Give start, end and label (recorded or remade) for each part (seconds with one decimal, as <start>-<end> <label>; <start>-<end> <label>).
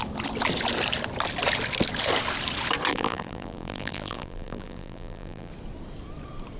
0.0-2.9 recorded; 2.9-5.5 remade; 5.5-6.6 recorded